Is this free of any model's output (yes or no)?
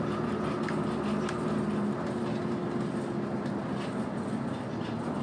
yes